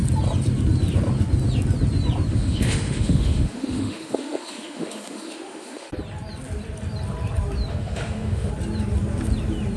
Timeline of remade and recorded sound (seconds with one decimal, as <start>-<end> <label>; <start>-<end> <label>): 0.0-2.3 recorded; 2.3-5.9 remade; 5.9-7.7 recorded; 7.7-8.5 remade; 8.5-9.8 recorded